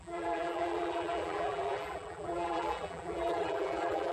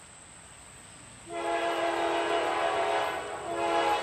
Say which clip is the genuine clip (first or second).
second